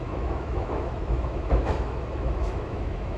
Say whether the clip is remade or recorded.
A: remade